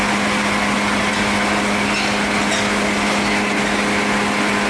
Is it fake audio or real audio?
real